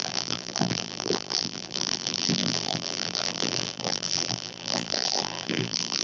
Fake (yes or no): yes